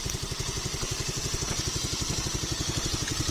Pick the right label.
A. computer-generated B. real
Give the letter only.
A